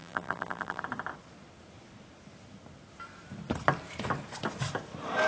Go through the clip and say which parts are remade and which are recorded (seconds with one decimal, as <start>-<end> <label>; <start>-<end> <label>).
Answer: 0.0-0.8 remade; 0.8-5.3 recorded